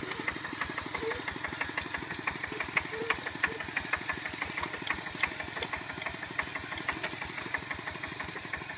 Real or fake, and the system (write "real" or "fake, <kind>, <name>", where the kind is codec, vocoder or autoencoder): real